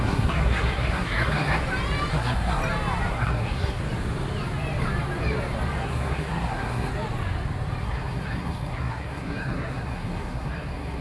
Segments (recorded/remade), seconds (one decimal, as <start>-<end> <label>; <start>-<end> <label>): 0.0-1.6 remade; 1.6-2.1 recorded; 2.1-2.6 remade; 2.6-3.1 recorded; 3.1-3.8 remade; 3.8-5.8 recorded; 5.8-6.9 remade; 6.9-7.8 recorded; 7.8-11.0 remade